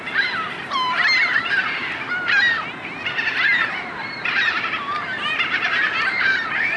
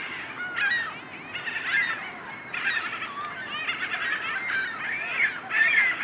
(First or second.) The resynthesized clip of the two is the first